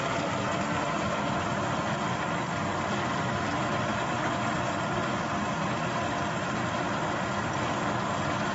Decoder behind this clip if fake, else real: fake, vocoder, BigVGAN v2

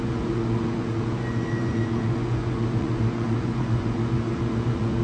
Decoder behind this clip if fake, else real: fake, vocoder, Vocos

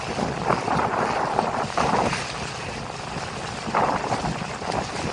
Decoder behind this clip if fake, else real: real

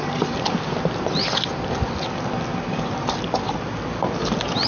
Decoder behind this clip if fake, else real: real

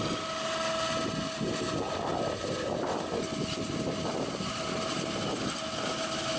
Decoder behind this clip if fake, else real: real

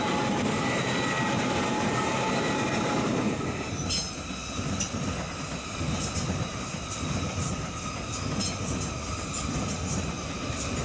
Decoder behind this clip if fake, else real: real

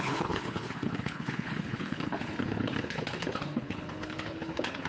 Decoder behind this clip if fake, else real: fake, codec, HILCodec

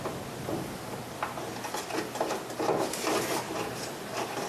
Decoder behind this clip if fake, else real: real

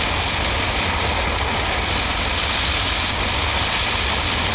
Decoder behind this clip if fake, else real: real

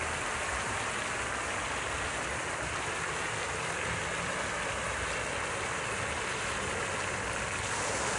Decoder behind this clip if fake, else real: real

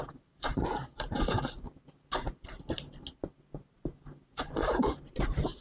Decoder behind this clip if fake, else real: real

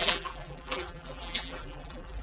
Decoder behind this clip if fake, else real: fake, vocoder, BigVGAN v2